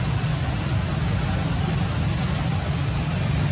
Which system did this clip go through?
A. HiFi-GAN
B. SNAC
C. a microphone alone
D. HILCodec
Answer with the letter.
C